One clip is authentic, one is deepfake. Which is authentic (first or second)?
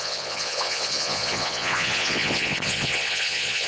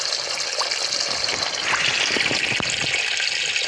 second